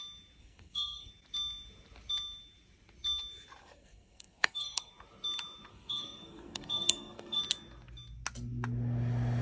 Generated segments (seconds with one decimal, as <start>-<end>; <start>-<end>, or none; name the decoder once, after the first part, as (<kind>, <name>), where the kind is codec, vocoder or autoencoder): 0.4-1.1 (codec, SNAC); 3.6-4.9; 5.7-7.4